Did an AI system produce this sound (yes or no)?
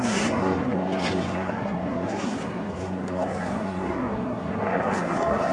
yes